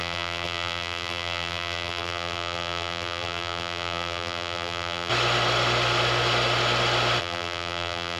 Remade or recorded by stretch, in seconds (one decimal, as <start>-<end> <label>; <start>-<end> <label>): 0.0-5.1 remade; 5.1-7.2 recorded; 7.2-8.2 remade